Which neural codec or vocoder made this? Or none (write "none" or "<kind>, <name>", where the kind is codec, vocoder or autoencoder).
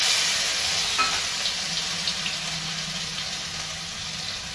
none